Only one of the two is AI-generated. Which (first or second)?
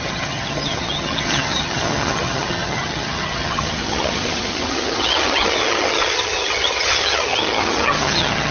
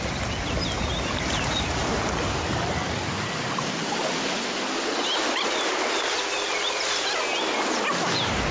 first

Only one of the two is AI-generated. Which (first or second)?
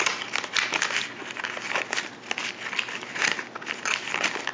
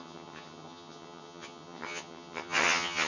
second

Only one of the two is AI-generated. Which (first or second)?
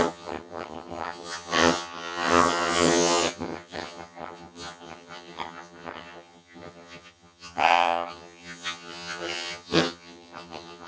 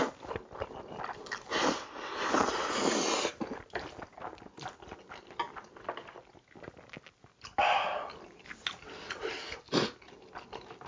first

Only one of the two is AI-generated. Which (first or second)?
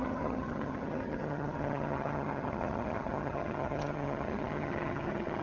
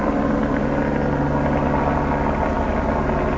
first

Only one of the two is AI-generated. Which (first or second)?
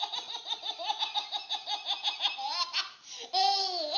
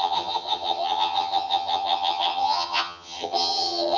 second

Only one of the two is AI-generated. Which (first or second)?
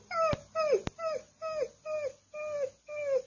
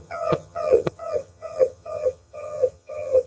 second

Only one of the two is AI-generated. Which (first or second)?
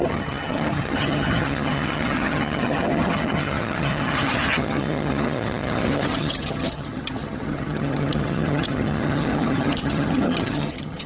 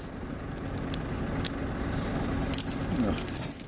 first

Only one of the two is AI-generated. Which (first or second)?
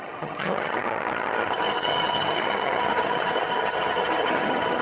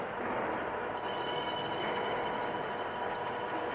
first